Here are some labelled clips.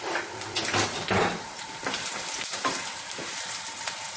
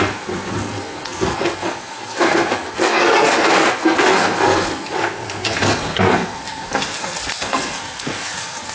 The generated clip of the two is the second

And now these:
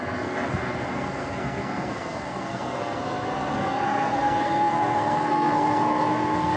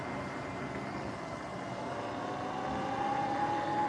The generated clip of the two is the first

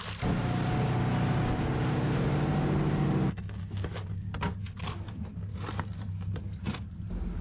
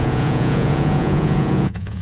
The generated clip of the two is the second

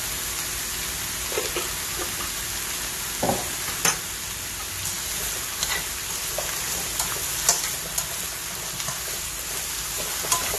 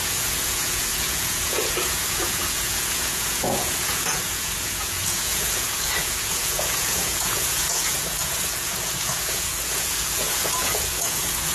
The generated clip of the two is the second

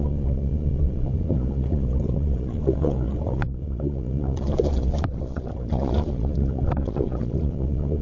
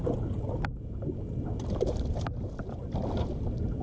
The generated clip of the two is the first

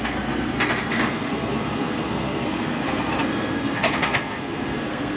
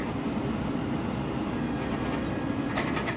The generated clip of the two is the first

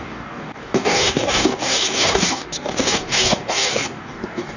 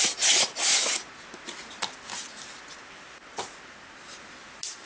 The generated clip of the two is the first